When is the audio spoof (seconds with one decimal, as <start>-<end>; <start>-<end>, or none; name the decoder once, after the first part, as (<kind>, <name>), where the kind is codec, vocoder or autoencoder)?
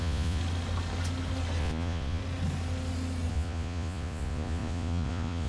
0.0-0.4 (vocoder, Vocos); 1.6-2.2; 3.3-5.5